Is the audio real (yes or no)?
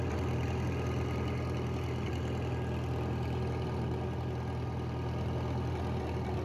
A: yes